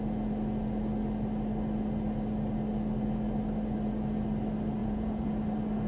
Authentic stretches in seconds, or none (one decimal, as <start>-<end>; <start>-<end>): 0.0-4.8; 5.3-5.9